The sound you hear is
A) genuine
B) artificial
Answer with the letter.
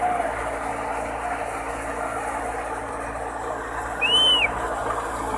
A